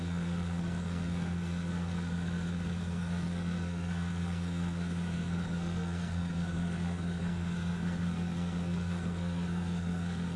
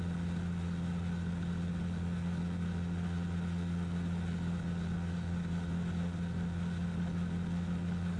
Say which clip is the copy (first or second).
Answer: first